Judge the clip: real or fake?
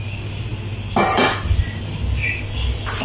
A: real